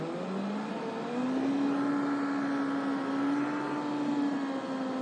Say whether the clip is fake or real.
real